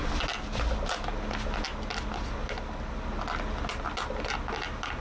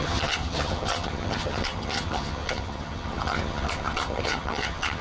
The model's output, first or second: second